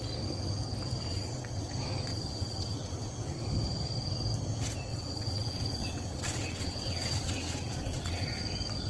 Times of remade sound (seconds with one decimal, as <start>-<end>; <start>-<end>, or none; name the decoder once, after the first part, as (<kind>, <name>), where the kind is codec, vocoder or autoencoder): 1.1-1.7 (vocoder, WaveNeXt); 2.1-3.1; 4.9-8.4